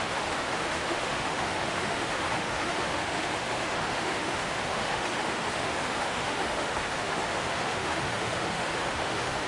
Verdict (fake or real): fake